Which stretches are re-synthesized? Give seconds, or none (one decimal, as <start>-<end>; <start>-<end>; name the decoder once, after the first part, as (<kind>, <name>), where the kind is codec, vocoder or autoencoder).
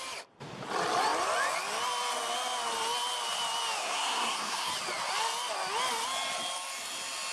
3.8-4.7 (codec, SNAC)